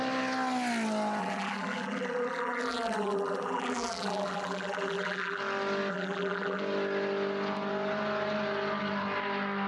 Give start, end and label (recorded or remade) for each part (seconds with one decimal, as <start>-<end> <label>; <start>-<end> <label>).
0.0-1.2 recorded; 1.2-5.4 remade; 5.4-5.9 recorded; 5.9-6.6 remade; 6.6-9.7 recorded